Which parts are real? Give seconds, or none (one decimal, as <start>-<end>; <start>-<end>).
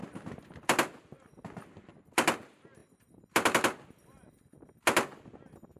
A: 0.0-5.8